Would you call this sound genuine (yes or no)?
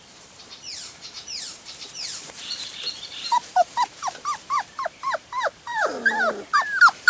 no